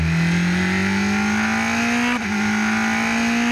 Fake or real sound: real